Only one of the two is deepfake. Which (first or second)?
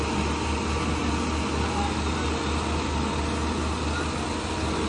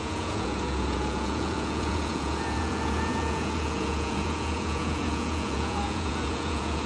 second